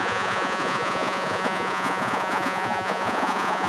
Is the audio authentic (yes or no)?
no